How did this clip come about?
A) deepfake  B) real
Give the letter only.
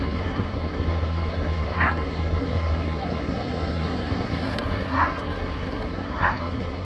A